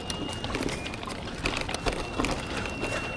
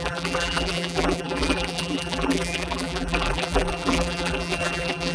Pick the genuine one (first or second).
first